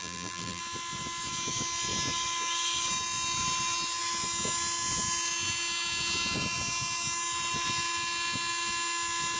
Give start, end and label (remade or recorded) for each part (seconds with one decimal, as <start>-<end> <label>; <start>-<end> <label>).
0.0-0.6 remade; 0.6-9.4 recorded